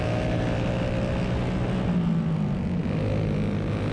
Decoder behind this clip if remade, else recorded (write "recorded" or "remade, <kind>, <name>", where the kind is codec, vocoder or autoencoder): recorded